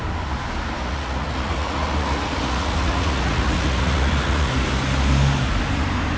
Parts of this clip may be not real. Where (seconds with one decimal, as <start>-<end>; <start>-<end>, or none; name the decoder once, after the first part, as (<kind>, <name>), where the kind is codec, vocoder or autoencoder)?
0.8-4.5 (vocoder, Vocos)